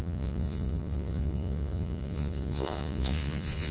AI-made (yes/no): yes